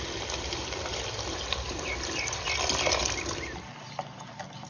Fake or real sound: fake